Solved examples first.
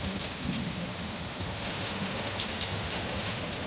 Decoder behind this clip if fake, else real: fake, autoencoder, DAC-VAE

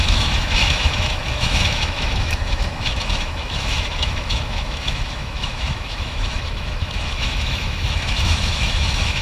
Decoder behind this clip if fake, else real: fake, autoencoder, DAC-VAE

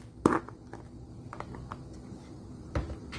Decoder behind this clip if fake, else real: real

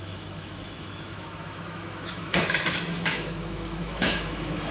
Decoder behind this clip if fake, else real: fake, autoencoder, DAC-VAE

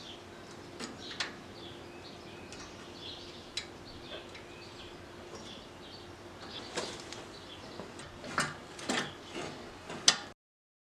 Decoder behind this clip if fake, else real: real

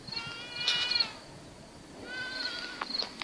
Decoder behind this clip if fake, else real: real